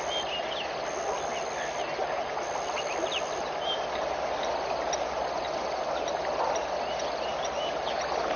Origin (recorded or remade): recorded